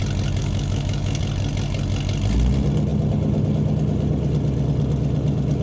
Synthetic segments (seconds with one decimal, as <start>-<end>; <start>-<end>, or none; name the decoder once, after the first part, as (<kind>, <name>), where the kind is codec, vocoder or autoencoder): 0.4-1.2 (autoencoder, DAC-VAE)